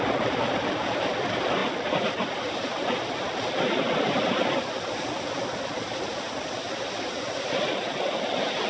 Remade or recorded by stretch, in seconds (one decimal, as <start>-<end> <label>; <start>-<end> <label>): 0.0-8.7 recorded